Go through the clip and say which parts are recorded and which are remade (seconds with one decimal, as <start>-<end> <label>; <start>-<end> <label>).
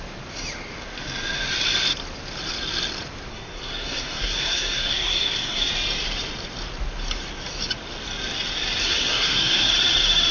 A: 0.0-3.3 recorded; 3.3-5.7 remade; 5.7-8.8 recorded; 8.8-9.7 remade; 9.7-10.3 recorded